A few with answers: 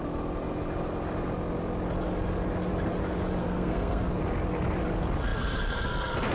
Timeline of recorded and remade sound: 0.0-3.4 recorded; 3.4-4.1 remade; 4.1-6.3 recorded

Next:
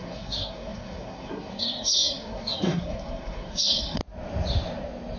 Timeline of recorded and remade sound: 0.0-4.0 remade; 4.0-5.2 recorded

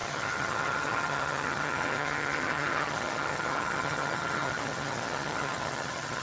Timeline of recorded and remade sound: 0.0-6.2 remade

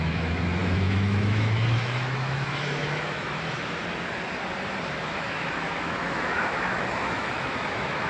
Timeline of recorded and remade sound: 0.0-3.8 remade; 3.8-5.0 recorded; 5.0-8.1 remade

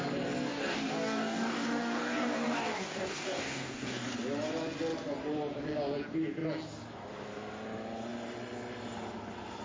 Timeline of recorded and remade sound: 0.0-0.5 recorded; 0.5-4.1 remade; 4.1-9.6 recorded

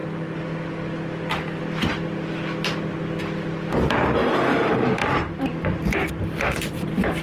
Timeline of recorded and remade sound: 0.0-4.3 recorded; 4.3-5.0 remade; 5.0-6.7 recorded; 6.7-7.2 remade